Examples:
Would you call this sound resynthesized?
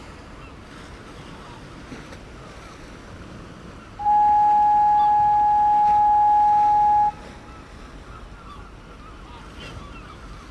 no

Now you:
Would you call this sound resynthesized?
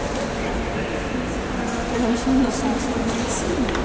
no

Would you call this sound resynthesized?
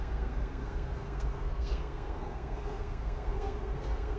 yes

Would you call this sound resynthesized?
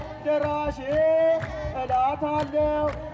no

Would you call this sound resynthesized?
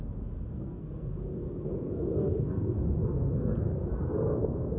yes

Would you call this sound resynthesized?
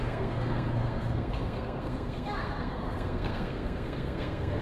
yes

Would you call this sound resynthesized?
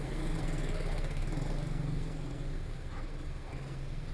yes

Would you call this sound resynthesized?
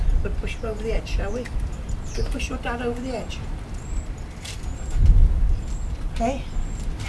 no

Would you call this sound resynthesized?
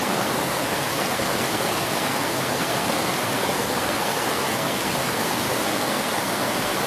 yes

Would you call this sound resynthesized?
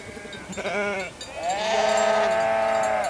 no